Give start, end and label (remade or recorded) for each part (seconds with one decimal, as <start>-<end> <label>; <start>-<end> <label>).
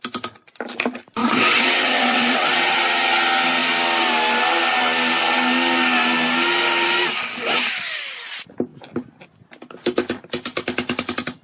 0.0-1.2 recorded; 1.2-2.8 remade; 2.8-11.4 recorded